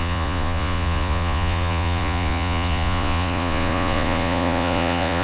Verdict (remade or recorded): remade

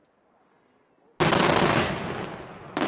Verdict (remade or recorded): recorded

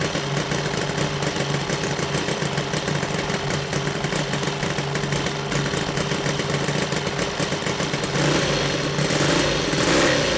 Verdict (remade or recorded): recorded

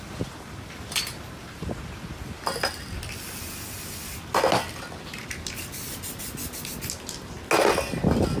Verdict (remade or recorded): recorded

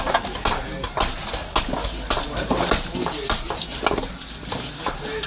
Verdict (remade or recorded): recorded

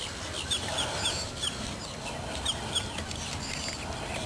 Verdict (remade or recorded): recorded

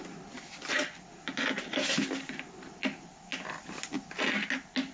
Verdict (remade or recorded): recorded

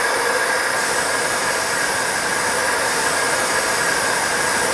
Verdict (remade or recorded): recorded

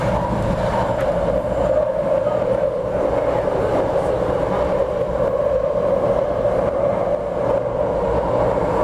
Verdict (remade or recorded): recorded